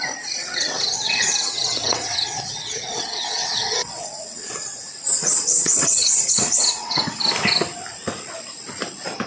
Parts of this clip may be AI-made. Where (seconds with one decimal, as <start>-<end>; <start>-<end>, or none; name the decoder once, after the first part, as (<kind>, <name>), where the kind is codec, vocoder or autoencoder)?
0.4-4.5 (vocoder, WaveNeXt); 5.2-7.2

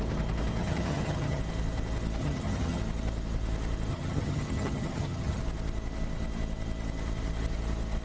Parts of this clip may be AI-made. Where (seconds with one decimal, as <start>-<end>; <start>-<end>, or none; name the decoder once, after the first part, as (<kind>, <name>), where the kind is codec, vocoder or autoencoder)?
0.6-1.4 (vocoder, HiFi-GAN); 2.2-2.8; 3.9-5.4